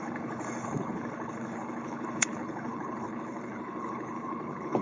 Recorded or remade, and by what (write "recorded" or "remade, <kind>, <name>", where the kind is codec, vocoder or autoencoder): remade, codec, HILCodec